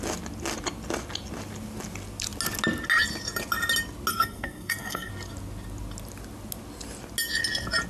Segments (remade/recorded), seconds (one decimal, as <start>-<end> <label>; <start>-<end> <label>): 0.0-4.1 recorded; 4.1-5.1 remade; 5.1-7.9 recorded